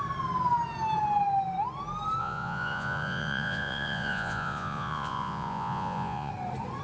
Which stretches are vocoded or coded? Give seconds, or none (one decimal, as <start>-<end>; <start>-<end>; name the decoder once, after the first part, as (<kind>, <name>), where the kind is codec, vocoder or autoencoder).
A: 2.2-6.3 (vocoder, Vocos)